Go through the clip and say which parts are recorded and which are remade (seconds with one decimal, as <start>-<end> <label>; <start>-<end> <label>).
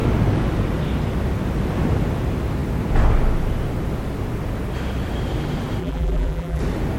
0.0-5.8 recorded; 5.8-6.6 remade; 6.6-7.0 recorded